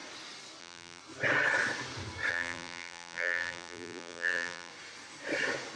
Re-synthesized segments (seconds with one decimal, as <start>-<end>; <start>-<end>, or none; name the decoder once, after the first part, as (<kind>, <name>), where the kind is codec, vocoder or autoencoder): 0.6-1.0 (vocoder, BigVGAN v2); 2.3-4.7